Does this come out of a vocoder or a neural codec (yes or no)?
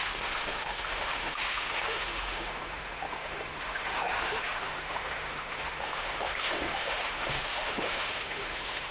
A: yes